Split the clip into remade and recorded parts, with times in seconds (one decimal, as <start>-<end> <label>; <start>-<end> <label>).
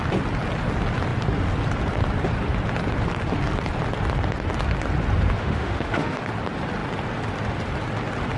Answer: 0.0-5.4 recorded; 5.4-6.2 remade; 6.2-8.4 recorded